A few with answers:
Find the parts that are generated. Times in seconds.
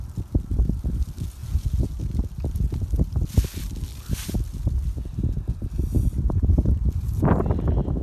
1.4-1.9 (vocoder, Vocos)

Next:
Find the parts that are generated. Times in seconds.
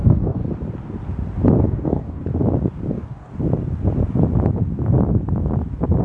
0.0-0.4 (codec, DAC); 1.6-2.2; 2.9-3.3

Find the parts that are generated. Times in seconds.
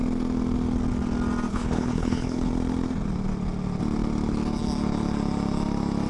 1.5-2.5 (codec, HILCodec)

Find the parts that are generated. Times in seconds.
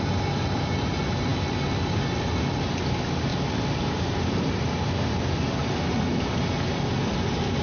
3.3-4.5 (vocoder, BigVGAN v2)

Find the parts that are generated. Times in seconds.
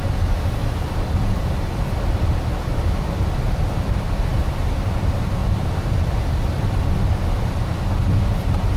0.6-1.8 (vocoder, BigVGAN v2); 5.4-6.8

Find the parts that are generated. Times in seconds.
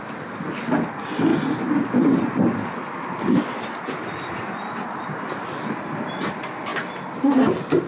none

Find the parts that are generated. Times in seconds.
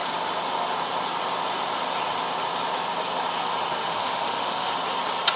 3.8-4.7 (autoencoder, DAC-VAE)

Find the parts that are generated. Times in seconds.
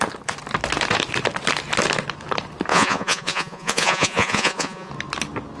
2.7-4.9 (vocoder, Vocos)